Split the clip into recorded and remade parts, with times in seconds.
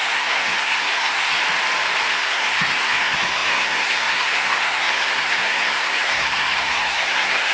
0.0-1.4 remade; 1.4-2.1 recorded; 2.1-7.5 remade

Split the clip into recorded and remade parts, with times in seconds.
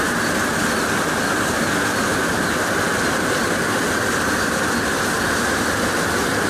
0.0-6.5 recorded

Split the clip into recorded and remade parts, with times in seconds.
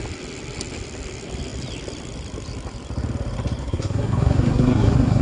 0.0-3.6 recorded; 3.6-5.2 remade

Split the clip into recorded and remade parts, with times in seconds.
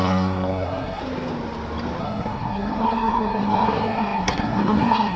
0.0-1.0 remade; 1.0-2.0 recorded; 2.0-5.2 remade